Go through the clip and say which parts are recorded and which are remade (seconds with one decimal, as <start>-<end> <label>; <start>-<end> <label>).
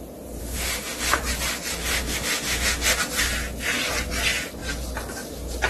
0.0-0.4 recorded; 0.4-1.2 remade; 1.2-1.8 recorded; 1.8-3.0 remade; 3.0-5.7 recorded